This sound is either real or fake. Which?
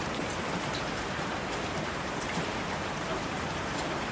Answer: fake